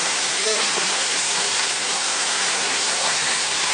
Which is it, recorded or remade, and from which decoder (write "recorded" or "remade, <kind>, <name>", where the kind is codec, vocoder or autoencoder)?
remade, codec, SNAC